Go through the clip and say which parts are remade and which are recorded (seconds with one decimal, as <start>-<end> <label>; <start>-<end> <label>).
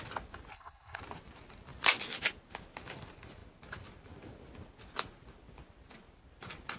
0.0-0.5 recorded; 0.5-1.0 remade; 1.0-6.8 recorded